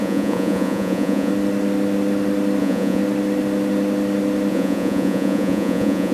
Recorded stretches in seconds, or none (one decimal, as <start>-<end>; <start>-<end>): 1.3-2.6; 3.0-4.5